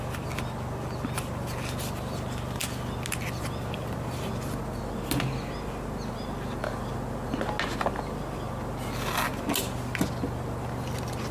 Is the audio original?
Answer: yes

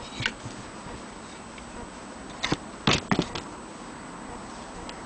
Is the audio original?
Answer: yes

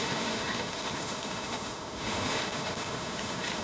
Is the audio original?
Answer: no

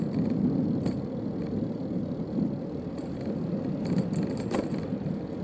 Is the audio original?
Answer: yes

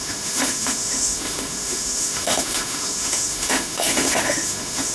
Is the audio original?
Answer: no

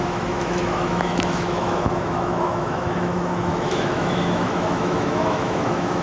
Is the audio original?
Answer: no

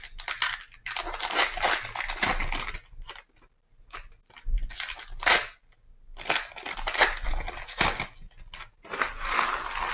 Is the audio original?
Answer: yes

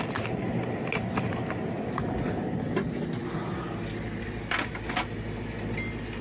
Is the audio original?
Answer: yes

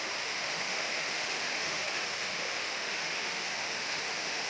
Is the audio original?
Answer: no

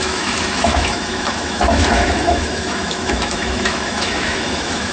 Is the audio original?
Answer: no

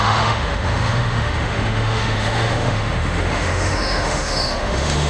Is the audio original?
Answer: no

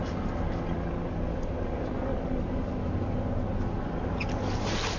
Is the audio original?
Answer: yes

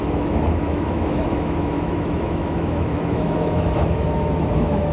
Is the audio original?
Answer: no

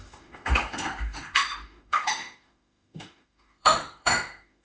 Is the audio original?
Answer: no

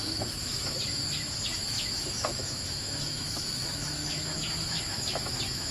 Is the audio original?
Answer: no